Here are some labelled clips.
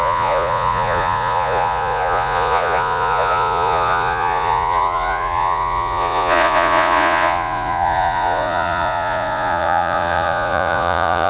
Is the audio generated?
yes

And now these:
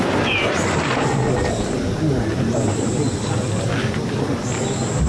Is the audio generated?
no